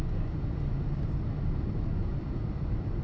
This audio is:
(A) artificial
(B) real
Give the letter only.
B